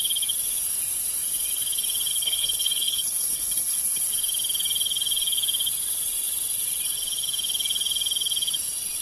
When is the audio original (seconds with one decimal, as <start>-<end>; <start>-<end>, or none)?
0.0-2.1; 4.1-9.0